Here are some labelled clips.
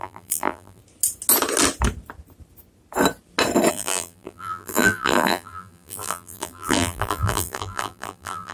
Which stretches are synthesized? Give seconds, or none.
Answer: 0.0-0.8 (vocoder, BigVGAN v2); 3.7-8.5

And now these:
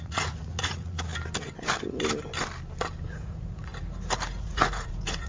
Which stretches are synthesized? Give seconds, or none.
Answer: 0.0-1.1 (vocoder, Vocos); 3.1-3.7; 4.4-5.3

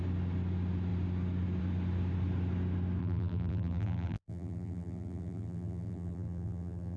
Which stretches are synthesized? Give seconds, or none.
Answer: 3.0-7.0 (vocoder, BigVGAN v2)

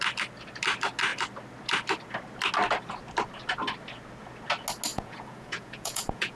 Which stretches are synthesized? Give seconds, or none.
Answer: 4.9-6.4 (vocoder, Vocos)

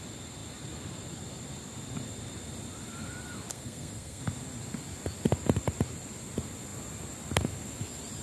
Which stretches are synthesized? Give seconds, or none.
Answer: 3.5-4.2 (codec, SNAC)

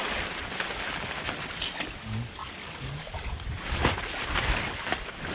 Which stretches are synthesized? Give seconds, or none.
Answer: 2.4-3.3 (codec, DAC)

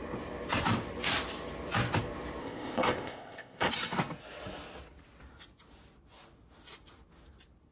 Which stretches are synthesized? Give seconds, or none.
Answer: 2.4-3.7 (codec, ZipCodec)

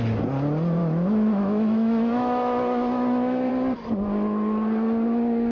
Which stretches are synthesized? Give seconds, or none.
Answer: 0.8-3.5 (autoencoder, DAC-VAE)